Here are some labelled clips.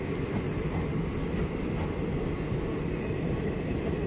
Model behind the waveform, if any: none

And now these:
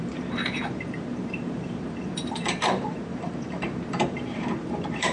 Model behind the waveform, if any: vocoder, BigVGAN v2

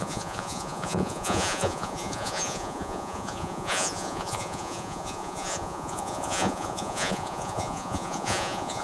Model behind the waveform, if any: vocoder, Vocos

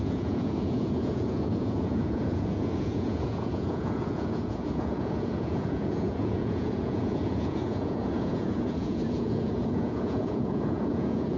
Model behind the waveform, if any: vocoder, Vocos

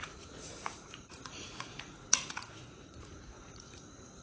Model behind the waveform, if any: vocoder, Vocos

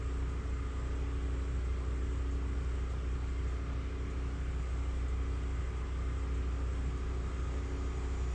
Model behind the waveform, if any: none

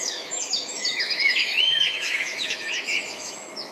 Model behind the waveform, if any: autoencoder, DAC-VAE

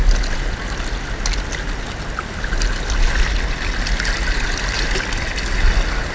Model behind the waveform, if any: none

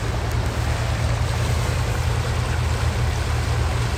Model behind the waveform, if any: none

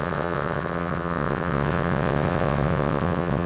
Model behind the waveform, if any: vocoder, WaveNeXt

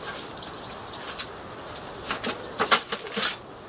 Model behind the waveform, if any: none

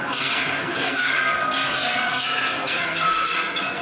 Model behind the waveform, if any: codec, SNAC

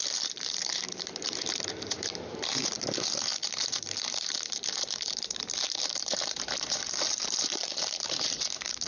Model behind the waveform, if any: vocoder, BigVGAN v2